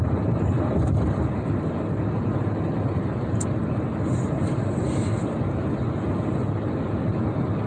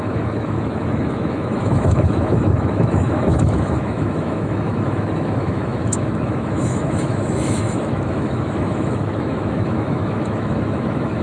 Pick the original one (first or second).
first